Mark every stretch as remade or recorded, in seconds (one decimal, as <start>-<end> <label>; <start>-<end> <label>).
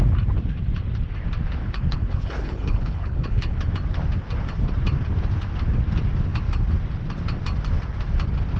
0.0-1.6 recorded; 1.6-3.7 remade; 3.7-8.6 recorded